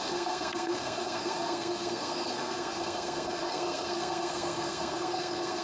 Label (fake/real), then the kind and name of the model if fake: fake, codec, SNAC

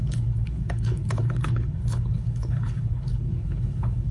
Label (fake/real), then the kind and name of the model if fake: fake, codec, HILCodec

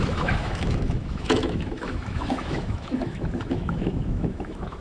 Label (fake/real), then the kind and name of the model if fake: fake, autoencoder, DAC-VAE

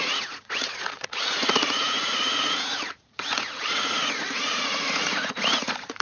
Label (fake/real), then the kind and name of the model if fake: fake, vocoder, Vocos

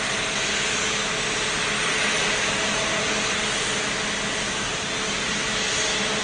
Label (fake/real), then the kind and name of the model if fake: real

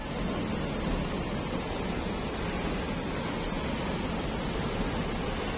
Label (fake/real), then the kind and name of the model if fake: real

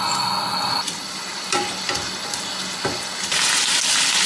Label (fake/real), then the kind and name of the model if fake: real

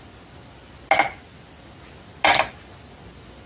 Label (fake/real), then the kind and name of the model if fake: real